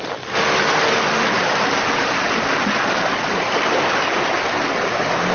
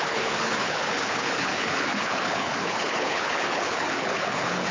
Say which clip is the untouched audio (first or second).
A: first